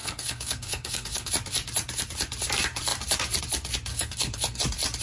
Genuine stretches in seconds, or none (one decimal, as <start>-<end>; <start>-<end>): 1.3-3.9; 4.6-5.0